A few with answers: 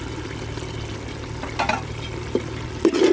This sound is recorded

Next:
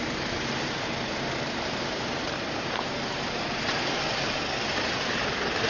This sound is remade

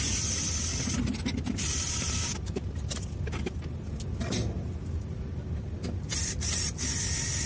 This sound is recorded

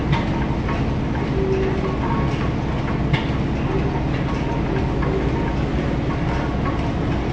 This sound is recorded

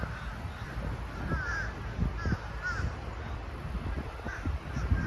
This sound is recorded